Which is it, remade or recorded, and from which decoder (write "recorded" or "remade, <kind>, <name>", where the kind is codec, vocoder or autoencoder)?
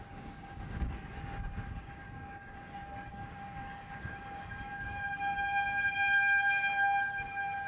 remade, codec, DAC